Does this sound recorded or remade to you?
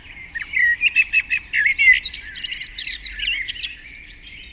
remade